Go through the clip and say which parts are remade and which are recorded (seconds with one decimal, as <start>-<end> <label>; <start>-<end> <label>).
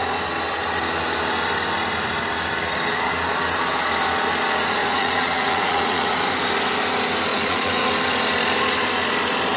0.0-4.8 recorded; 4.8-6.1 remade; 6.1-7.3 recorded; 7.3-7.9 remade; 7.9-9.6 recorded